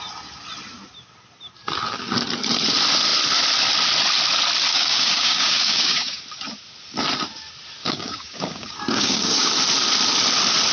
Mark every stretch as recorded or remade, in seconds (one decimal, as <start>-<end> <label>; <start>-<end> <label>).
0.0-4.7 recorded; 4.7-6.2 remade; 6.2-7.8 recorded; 7.8-9.5 remade; 9.5-10.7 recorded